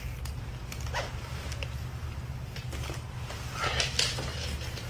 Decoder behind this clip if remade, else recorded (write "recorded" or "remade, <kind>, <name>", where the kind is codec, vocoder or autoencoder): recorded